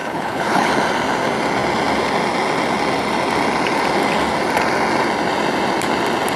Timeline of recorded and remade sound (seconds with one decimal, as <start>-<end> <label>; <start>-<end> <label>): 0.0-0.7 remade; 0.7-6.4 recorded